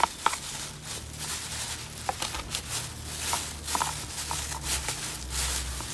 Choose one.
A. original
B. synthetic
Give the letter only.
A